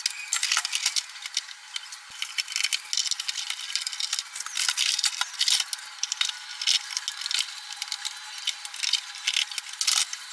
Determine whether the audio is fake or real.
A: real